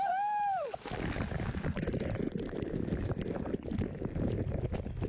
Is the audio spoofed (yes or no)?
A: yes